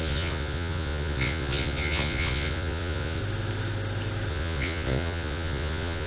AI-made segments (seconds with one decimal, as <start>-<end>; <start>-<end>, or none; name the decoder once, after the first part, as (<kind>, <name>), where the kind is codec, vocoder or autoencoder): 0.0-3.2 (vocoder, Vocos); 4.3-6.1

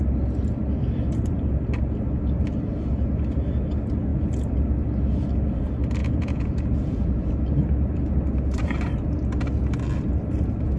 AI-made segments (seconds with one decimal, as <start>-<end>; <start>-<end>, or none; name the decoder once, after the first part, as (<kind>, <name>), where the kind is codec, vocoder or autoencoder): 6.0-7.3 (vocoder, Vocos)